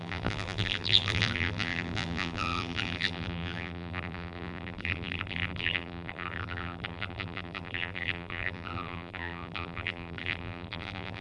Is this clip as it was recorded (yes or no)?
no